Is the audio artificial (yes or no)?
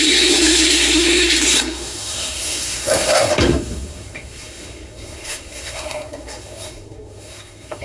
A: yes